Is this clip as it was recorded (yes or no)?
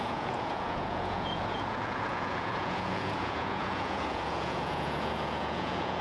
no